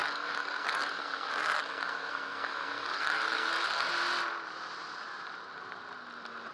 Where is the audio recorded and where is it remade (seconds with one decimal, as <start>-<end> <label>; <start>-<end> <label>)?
0.0-3.9 remade; 3.9-6.5 recorded